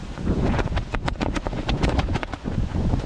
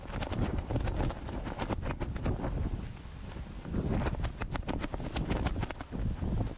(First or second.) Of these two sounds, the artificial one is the first